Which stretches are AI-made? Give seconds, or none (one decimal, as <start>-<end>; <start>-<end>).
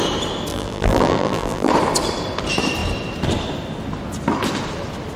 0.5-1.7